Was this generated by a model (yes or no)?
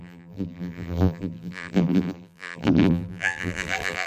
yes